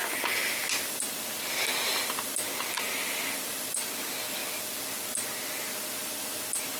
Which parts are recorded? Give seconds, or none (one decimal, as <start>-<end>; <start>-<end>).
0.0-6.8